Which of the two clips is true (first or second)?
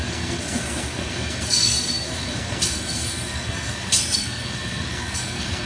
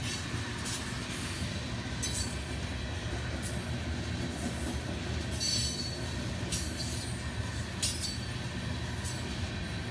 second